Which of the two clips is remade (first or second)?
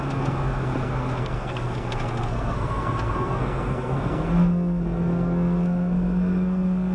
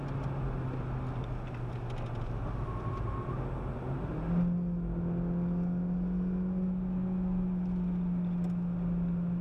first